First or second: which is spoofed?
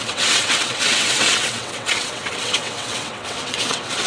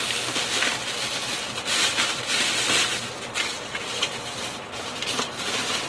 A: first